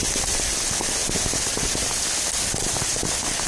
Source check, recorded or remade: recorded